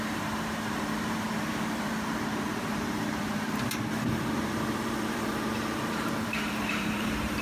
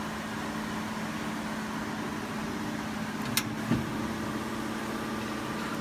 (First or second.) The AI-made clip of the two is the first